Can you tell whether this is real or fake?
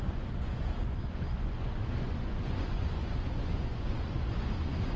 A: fake